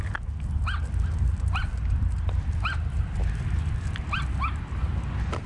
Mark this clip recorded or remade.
recorded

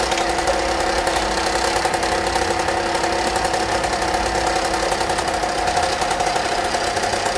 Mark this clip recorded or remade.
recorded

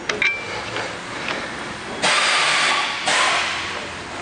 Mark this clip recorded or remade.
recorded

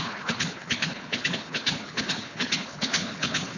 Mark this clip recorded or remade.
remade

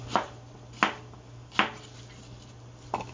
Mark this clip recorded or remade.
recorded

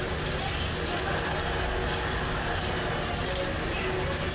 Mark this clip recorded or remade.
recorded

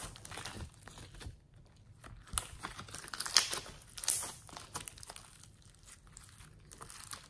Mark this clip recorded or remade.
recorded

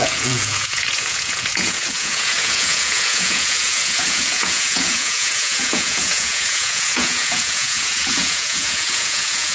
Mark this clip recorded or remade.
remade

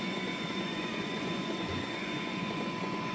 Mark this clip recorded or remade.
remade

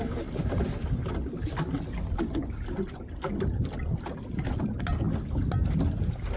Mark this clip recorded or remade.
recorded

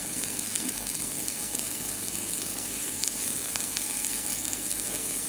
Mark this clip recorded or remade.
remade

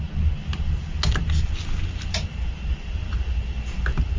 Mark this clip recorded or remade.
recorded